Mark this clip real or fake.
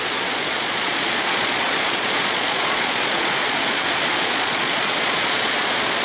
fake